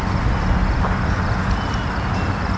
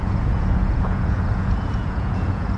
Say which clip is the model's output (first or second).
second